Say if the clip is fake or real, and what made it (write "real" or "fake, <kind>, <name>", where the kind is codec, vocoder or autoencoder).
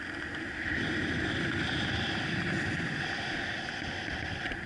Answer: real